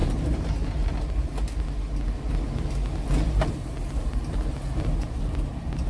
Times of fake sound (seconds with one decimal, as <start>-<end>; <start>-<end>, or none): none